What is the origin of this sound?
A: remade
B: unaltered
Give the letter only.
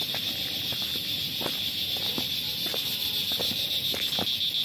B